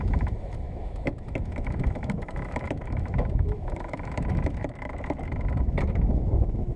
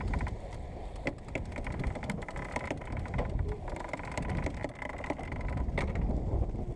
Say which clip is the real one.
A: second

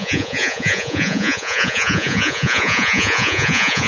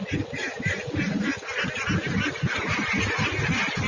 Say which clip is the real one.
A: second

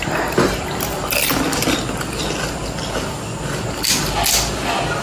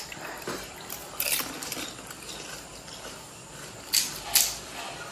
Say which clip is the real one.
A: first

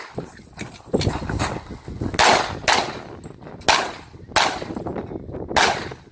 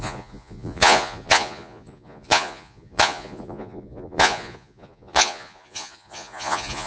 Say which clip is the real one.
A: first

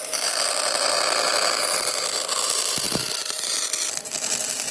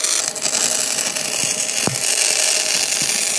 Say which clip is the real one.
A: second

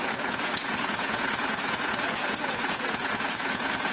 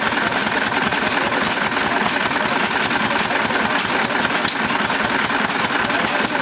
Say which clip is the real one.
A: second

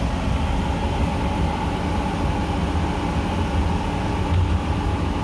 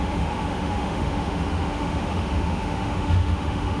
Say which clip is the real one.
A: first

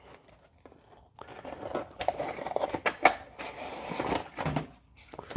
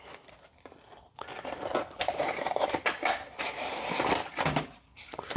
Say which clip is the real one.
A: first